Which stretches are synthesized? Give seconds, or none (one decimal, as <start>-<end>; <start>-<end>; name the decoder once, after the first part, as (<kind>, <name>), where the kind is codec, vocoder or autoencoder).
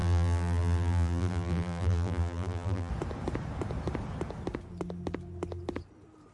0.0-2.9 (vocoder, BigVGAN v2)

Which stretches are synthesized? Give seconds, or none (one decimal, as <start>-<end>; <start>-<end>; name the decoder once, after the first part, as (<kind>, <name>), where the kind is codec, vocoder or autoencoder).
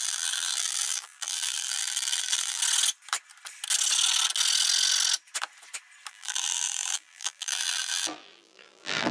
0.0-2.6 (vocoder, BigVGAN v2); 6.1-9.1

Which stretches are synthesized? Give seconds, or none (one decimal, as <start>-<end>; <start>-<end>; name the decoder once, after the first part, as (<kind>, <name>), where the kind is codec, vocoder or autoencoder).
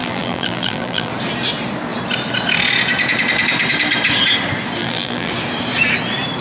0.0-1.1 (vocoder, BigVGAN v2); 4.8-5.3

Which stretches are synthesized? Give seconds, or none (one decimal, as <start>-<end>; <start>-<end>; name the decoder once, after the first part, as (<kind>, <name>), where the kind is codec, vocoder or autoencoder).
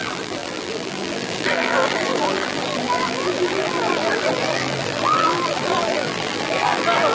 0.0-7.1 (vocoder, BigVGAN v2)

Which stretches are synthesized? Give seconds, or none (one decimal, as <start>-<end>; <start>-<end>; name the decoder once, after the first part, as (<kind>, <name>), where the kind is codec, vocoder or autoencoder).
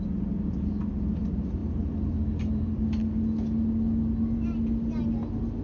none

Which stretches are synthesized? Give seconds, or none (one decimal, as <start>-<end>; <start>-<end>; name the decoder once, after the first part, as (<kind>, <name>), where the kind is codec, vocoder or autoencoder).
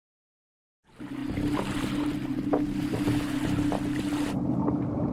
none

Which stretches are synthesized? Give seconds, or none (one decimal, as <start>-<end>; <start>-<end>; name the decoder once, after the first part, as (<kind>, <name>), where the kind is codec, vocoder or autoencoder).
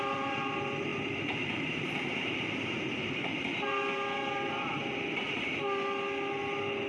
0.0-4.8 (vocoder, BigVGAN v2)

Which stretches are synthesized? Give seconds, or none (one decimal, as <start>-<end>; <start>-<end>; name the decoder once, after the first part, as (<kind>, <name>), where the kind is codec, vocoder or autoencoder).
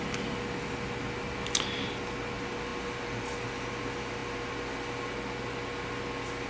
none